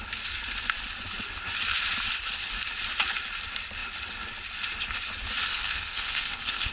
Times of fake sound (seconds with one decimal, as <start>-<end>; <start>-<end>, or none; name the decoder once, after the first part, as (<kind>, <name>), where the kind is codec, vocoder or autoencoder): 5.5-6.7 (codec, SNAC)